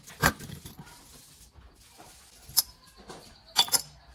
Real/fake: real